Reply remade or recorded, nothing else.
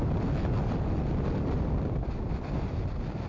recorded